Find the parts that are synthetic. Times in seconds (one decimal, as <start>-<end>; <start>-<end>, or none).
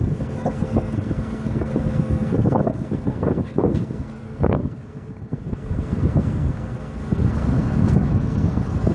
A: 0.0-8.9